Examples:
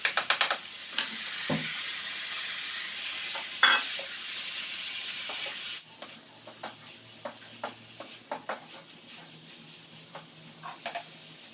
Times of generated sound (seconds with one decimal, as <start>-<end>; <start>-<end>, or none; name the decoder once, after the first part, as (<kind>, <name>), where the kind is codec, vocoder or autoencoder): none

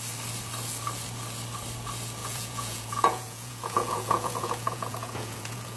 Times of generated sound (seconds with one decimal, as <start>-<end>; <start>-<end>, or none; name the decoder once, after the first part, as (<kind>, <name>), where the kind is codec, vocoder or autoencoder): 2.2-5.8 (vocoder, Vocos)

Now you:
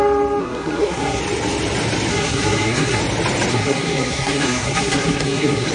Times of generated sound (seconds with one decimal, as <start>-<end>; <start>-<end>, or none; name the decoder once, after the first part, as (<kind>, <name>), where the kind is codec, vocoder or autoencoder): 0.4-1.2 (codec, SNAC); 2.1-3.0; 3.5-5.7

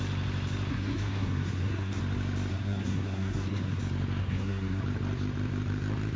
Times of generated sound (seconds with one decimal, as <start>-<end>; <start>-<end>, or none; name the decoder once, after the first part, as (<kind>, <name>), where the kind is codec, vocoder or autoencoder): 0.7-2.0 (codec, SNAC); 2.5-3.8; 4.2-4.8